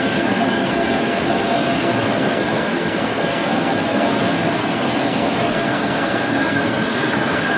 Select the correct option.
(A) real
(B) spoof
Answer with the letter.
B